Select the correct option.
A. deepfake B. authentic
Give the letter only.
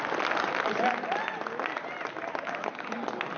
B